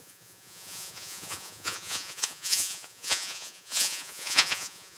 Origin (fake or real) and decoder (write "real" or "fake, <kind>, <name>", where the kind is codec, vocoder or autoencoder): fake, vocoder, Vocos